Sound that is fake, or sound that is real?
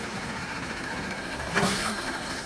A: fake